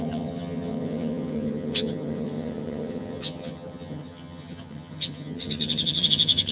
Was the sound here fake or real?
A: fake